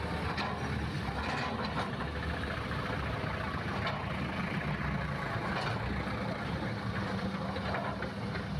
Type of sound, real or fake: real